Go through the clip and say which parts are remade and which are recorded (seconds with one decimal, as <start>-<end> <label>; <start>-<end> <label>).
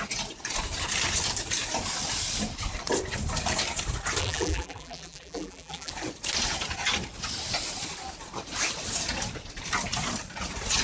0.0-4.2 recorded; 4.2-5.9 remade; 5.9-10.8 recorded